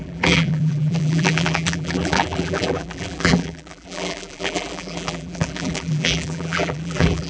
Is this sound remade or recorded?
remade